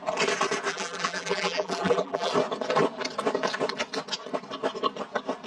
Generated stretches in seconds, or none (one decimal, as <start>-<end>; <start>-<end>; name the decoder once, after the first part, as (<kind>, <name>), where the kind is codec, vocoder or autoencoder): 0.7-2.3 (vocoder, BigVGAN v2)